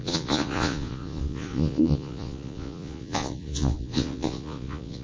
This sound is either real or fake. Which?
fake